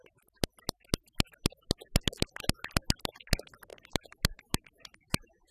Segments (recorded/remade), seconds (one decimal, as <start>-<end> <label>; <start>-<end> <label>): 0.0-3.7 recorded; 3.7-5.5 remade